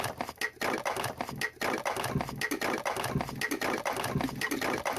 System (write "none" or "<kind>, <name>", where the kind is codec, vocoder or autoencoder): none